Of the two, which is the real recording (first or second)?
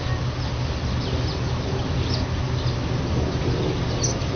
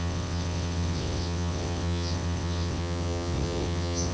first